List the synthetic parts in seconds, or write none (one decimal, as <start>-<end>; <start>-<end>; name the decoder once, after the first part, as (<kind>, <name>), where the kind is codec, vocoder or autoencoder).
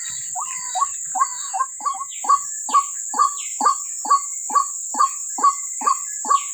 1.3-2.2 (autoencoder, DAC-VAE)